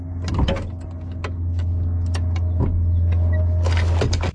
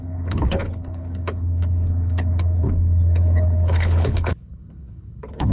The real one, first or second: first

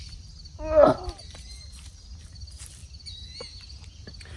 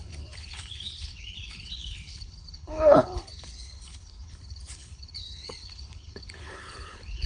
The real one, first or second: first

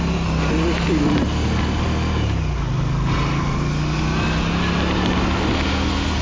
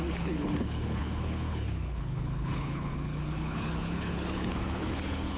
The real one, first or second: first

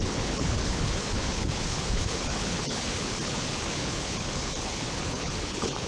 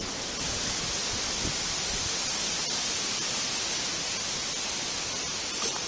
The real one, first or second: second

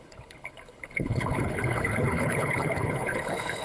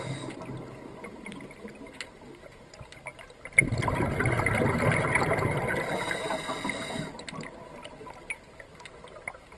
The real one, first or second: second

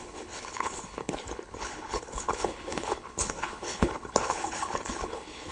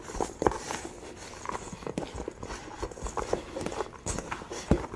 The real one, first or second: second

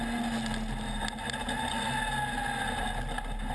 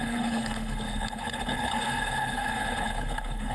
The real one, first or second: first